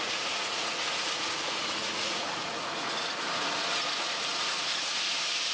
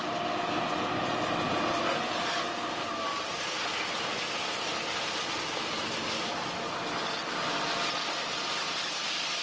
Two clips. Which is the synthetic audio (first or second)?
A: first